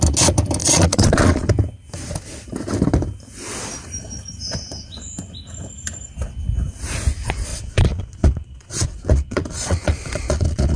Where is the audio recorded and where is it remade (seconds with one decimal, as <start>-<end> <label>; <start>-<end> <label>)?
0.0-0.6 recorded; 0.6-1.5 remade; 1.5-7.5 recorded; 7.5-10.8 remade